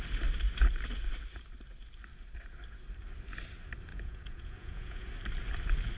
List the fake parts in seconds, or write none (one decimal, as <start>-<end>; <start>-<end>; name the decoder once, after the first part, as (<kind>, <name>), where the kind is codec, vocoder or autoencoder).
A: 3.9-5.1 (vocoder, Vocos)